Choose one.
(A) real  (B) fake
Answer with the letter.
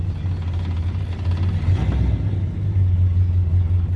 A